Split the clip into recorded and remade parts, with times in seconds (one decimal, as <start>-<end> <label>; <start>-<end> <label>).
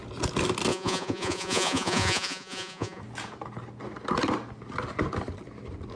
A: 0.0-0.7 recorded; 0.7-3.0 remade; 3.0-6.0 recorded